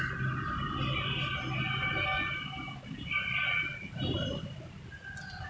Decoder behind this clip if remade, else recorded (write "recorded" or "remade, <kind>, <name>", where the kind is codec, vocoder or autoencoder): recorded